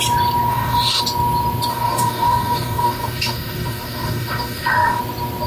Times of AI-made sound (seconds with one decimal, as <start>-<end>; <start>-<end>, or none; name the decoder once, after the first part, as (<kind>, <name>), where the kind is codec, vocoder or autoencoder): 0.5-1.0 (codec, DAC); 1.7-5.0